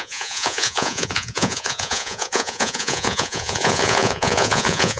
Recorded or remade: remade